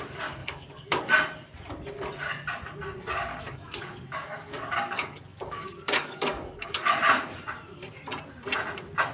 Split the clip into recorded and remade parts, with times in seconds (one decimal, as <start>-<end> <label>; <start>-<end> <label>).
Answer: 0.0-0.4 recorded; 0.4-1.1 remade; 1.1-3.3 recorded; 3.3-6.9 remade; 6.9-9.1 recorded